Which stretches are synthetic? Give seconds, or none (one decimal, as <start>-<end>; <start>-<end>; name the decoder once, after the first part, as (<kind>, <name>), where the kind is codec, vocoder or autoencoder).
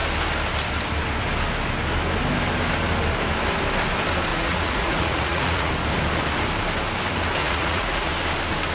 4.3-5.7 (vocoder, Vocos); 7.4-8.1